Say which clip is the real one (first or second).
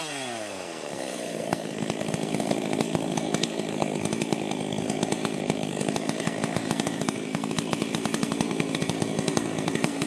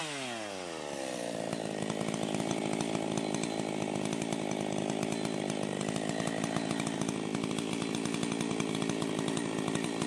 second